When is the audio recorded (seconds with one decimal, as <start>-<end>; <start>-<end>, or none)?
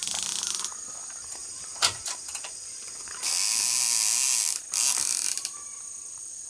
0.0-1.4; 3.3-6.5